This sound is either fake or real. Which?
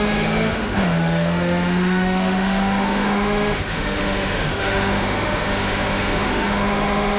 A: fake